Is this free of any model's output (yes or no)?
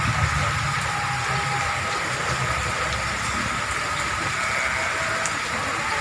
yes